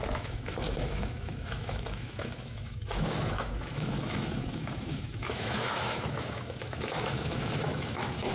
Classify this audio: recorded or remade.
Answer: remade